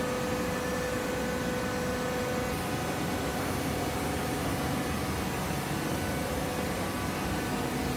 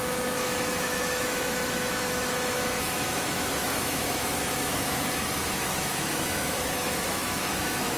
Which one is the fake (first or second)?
second